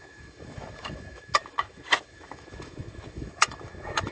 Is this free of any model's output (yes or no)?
no